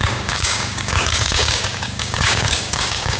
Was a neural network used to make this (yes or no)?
yes